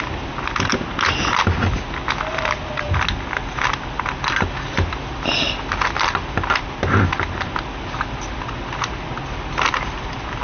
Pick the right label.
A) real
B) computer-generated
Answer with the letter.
A